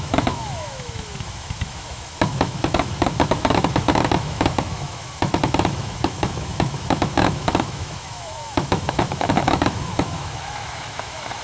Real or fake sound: fake